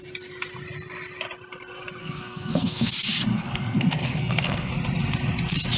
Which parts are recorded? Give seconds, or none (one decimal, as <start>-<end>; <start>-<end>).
0.0-2.0; 2.9-3.3; 4.7-5.8